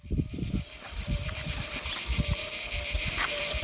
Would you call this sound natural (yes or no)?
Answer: no